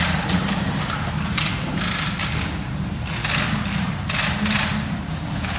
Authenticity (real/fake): real